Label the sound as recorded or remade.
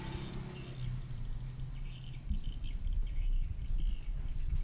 recorded